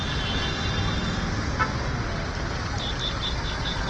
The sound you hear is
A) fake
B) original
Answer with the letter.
B